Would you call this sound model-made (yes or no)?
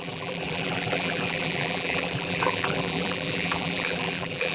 yes